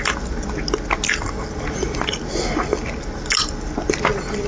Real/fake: real